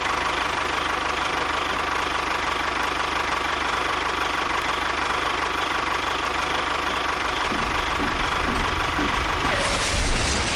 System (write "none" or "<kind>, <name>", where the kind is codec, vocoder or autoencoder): vocoder, BigVGAN v2